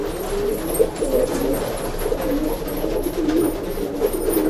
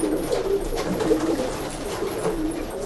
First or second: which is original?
first